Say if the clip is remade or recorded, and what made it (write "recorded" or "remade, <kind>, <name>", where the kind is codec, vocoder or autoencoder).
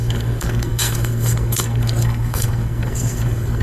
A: remade, codec, SNAC